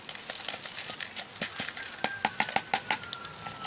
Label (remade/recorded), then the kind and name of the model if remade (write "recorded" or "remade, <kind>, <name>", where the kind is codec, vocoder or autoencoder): recorded